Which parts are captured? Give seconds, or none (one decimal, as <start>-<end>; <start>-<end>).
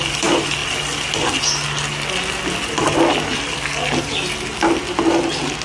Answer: 0.0-5.6